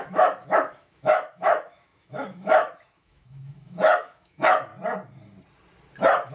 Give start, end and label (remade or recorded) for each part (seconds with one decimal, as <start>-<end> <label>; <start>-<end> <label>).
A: 0.0-4.7 remade; 4.7-6.3 recorded